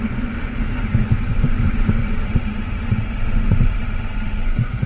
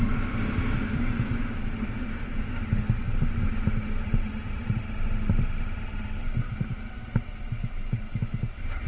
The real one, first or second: second